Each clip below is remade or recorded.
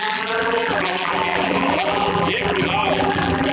remade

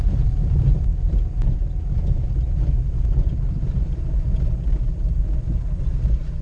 recorded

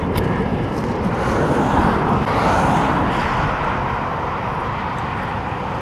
recorded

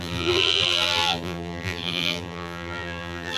remade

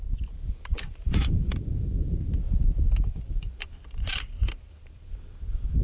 remade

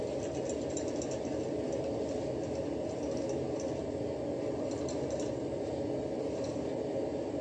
recorded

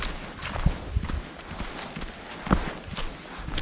recorded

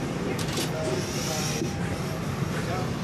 recorded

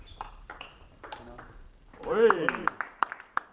remade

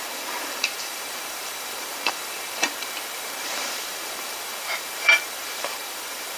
remade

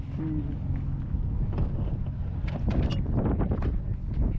recorded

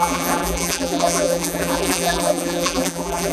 remade